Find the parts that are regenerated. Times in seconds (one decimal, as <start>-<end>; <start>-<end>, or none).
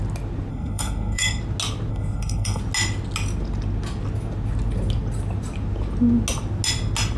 0.5-1.4; 1.9-2.6